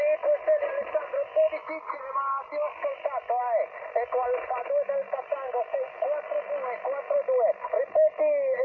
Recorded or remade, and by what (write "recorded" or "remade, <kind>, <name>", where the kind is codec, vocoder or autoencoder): recorded